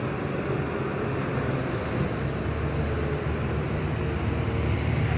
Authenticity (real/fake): real